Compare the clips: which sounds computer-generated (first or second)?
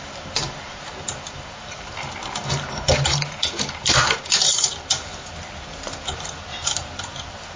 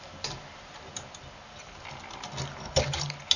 first